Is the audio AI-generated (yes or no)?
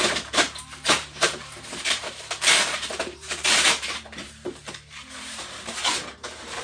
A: yes